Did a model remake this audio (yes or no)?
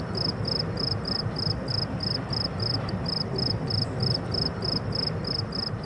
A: no